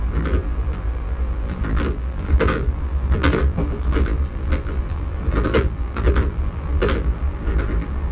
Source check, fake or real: fake